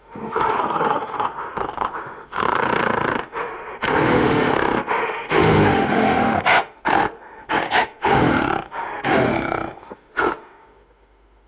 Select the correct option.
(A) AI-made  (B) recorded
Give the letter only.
A